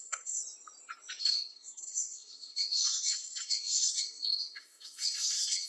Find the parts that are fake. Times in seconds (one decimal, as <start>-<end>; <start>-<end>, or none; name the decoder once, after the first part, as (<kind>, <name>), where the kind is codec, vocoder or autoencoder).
0.0-0.4 (codec, SNAC); 1.2-5.7